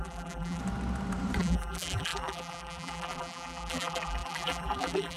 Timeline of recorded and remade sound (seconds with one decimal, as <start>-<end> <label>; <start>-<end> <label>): 0.0-0.6 remade; 0.6-1.4 recorded; 1.4-5.2 remade